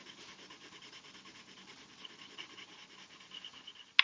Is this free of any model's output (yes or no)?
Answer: yes